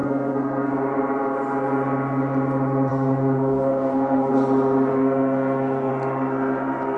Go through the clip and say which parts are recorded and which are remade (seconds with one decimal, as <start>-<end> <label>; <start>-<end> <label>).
0.0-0.7 remade; 0.7-2.9 recorded; 2.9-4.3 remade; 4.3-4.9 recorded; 4.9-5.9 remade; 5.9-7.0 recorded